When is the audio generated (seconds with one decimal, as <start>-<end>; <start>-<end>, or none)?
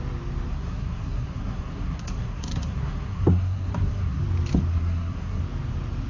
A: 0.5-4.2; 4.7-5.4